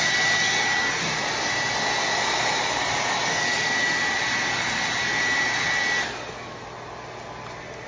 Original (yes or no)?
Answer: yes